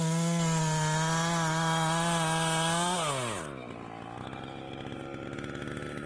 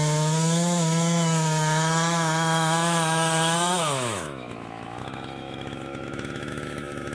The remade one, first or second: second